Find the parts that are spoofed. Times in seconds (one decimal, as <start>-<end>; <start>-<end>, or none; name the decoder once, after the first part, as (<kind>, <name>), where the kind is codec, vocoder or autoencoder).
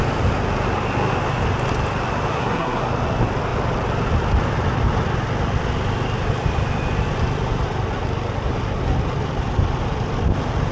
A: 2.3-2.9 (codec, SNAC)